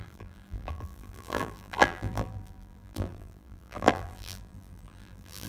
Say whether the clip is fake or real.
fake